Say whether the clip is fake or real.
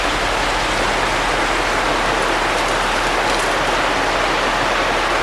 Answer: real